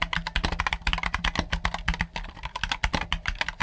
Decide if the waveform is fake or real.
real